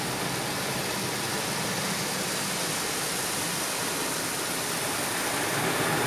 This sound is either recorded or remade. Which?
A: recorded